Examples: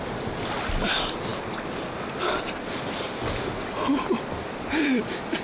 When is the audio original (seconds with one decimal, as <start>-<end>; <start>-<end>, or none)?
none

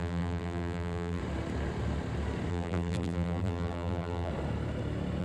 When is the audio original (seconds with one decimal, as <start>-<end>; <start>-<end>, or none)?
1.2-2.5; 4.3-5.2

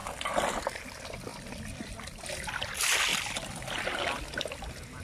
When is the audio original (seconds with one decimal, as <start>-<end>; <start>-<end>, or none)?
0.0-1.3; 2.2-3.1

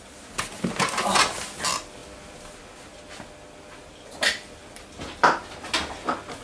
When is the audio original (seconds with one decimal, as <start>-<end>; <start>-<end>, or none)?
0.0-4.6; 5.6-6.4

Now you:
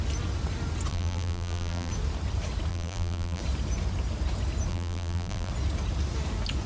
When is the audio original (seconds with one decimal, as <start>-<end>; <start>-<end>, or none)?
0.0-0.9; 1.9-2.7; 3.4-4.7; 5.5-6.7

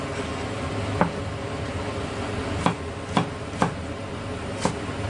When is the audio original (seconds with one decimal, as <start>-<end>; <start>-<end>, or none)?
0.0-5.1

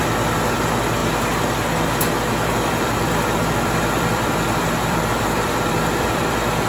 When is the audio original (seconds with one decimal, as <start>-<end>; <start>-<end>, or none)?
0.0-2.5; 6.2-6.7